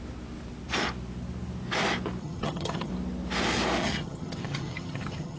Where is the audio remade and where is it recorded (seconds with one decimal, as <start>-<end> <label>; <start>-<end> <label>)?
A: 0.0-2.2 recorded; 2.2-2.9 remade; 2.9-3.8 recorded; 3.8-5.4 remade